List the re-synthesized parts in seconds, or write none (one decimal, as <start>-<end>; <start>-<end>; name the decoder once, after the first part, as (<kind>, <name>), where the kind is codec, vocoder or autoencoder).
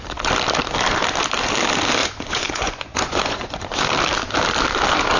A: 2.0-3.5 (vocoder, Vocos)